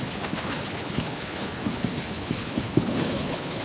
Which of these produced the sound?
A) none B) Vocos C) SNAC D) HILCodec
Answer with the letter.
D